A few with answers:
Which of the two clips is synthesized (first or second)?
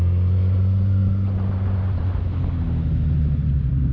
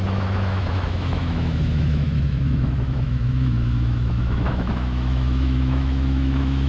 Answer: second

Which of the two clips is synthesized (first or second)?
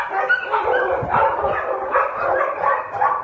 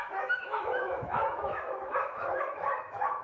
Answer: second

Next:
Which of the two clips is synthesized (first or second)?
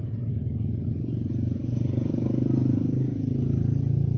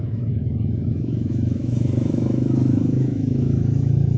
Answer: second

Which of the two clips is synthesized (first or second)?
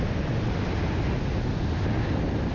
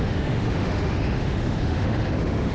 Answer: second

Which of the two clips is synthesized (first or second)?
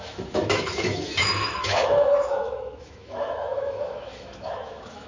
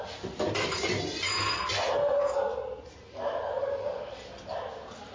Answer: first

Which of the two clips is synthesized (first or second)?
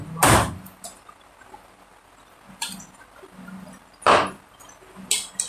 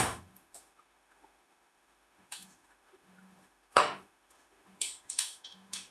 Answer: second